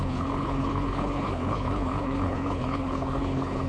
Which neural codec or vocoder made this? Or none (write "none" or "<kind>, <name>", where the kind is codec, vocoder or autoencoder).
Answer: codec, HILCodec